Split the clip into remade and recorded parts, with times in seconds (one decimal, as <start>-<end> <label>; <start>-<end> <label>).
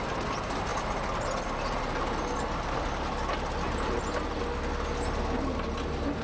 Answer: 0.0-6.2 recorded